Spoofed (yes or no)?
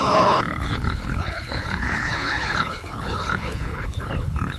yes